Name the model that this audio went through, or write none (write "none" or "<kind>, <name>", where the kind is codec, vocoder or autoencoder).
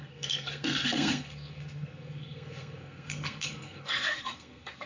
codec, SNAC